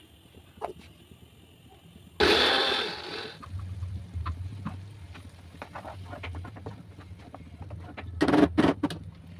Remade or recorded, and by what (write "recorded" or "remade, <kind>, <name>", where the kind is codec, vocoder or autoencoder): recorded